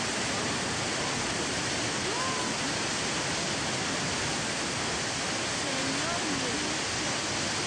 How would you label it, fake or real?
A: real